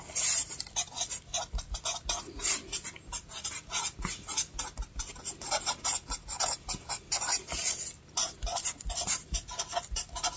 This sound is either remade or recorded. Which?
recorded